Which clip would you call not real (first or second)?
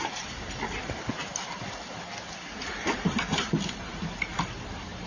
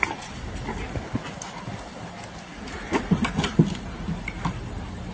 first